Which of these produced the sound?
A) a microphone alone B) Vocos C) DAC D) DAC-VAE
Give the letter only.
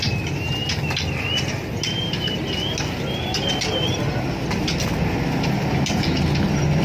A